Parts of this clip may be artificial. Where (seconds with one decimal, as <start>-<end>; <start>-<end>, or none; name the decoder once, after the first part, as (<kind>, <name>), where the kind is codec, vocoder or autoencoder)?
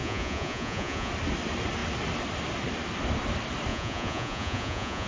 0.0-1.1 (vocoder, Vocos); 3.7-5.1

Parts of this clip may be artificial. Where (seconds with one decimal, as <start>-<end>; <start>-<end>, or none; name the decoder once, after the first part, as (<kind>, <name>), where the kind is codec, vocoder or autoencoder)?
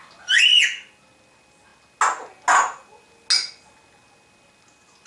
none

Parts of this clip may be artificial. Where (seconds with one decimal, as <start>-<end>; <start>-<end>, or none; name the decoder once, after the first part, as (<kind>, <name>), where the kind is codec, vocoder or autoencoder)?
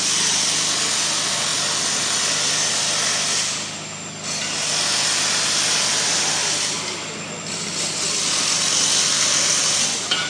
none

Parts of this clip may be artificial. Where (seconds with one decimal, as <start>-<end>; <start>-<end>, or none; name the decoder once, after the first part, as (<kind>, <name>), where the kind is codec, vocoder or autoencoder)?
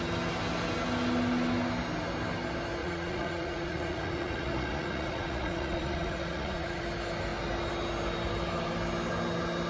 2.8-6.8 (vocoder, Vocos)